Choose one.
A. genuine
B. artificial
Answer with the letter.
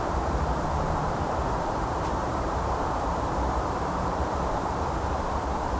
B